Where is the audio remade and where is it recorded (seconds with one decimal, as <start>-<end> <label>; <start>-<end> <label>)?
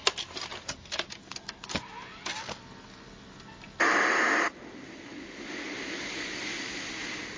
0.0-7.4 recorded